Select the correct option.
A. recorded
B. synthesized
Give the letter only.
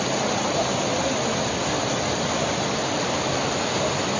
A